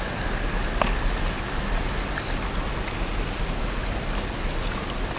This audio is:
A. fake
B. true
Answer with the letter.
B